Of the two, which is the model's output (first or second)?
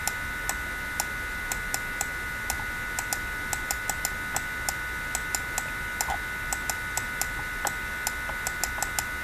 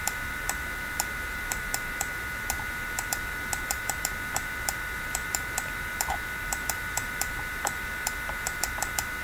second